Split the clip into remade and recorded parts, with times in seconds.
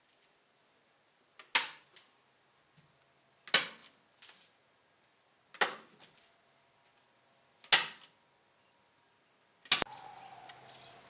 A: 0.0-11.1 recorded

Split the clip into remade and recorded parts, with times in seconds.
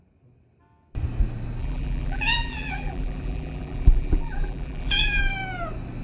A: 0.0-1.6 recorded; 1.6-5.2 remade; 5.2-6.0 recorded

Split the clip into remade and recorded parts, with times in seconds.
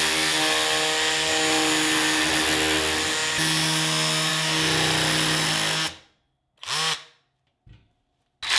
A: 0.0-8.6 recorded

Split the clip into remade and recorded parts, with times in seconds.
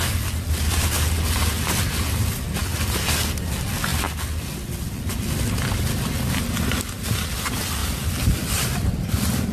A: 0.0-3.9 recorded; 3.9-4.7 remade; 4.7-7.8 recorded; 7.8-9.5 remade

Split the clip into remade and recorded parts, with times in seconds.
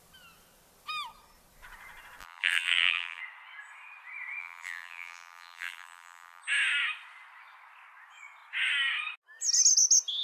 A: 0.0-2.2 recorded; 2.2-3.2 remade; 3.2-4.4 recorded; 4.4-6.4 remade; 6.4-10.2 recorded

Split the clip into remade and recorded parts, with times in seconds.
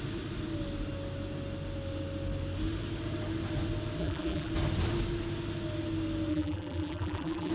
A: 0.0-4.0 recorded; 4.0-4.5 remade; 4.5-6.3 recorded; 6.3-7.5 remade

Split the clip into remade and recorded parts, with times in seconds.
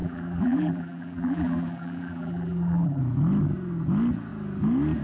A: 0.0-3.0 remade; 3.0-5.0 recorded